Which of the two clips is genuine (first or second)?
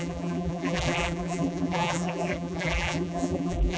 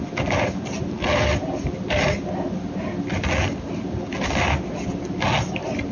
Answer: second